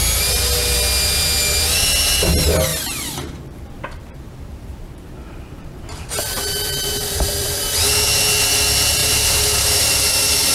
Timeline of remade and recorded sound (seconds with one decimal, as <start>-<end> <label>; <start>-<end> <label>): 0.0-2.7 recorded; 2.7-7.6 remade; 7.6-9.0 recorded; 9.0-10.0 remade; 10.0-10.5 recorded